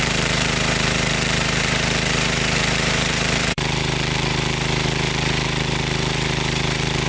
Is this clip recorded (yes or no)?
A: no